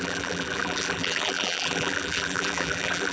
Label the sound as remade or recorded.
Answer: remade